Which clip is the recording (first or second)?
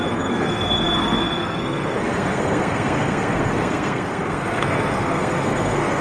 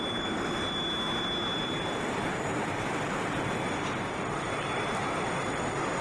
second